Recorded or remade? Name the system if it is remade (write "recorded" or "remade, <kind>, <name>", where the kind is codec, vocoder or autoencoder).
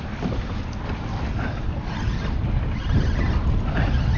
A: recorded